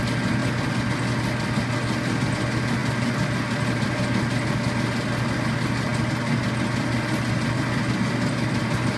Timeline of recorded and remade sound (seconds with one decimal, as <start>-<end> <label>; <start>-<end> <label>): 0.0-9.0 recorded